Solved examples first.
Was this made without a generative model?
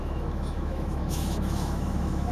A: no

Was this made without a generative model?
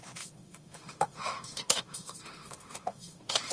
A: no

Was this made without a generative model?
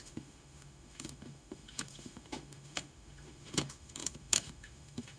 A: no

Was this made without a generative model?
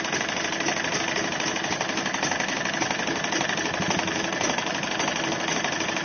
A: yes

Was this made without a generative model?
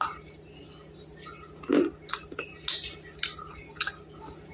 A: yes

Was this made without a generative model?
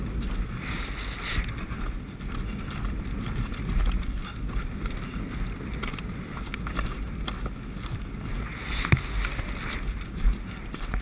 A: yes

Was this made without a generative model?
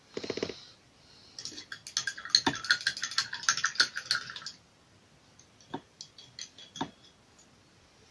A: yes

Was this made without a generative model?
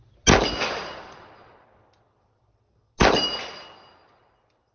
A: yes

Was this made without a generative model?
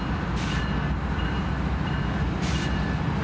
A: yes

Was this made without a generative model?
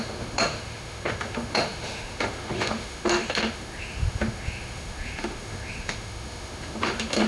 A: no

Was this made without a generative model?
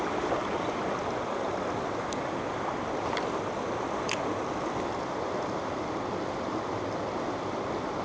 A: yes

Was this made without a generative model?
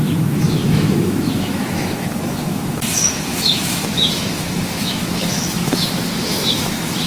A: no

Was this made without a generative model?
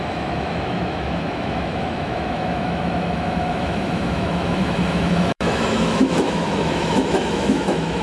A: no